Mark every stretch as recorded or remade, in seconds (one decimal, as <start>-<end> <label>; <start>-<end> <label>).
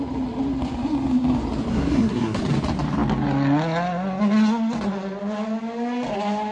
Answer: 0.0-1.7 recorded; 1.7-2.4 remade; 2.4-6.5 recorded